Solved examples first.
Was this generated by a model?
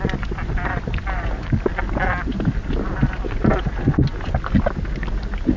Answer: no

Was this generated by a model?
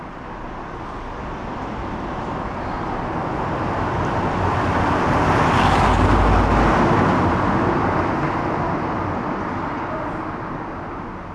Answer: no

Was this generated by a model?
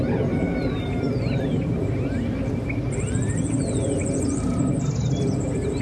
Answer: no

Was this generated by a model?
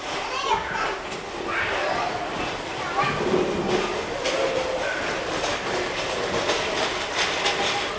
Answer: no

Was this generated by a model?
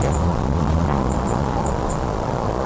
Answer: yes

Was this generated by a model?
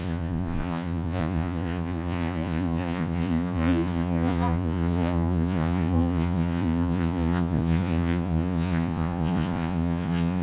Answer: yes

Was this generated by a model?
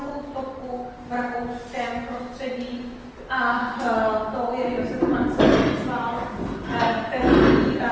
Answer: no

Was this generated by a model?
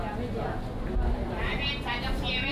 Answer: no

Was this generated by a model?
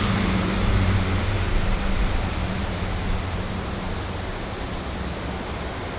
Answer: yes